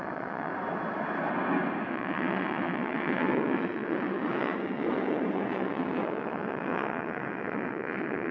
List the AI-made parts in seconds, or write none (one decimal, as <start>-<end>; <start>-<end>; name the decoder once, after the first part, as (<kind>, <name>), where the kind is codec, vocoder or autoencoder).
0.0-0.5 (vocoder, WaveNeXt); 1.9-8.3